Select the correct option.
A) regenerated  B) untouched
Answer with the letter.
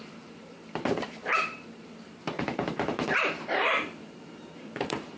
A